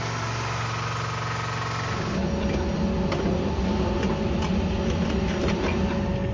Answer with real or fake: real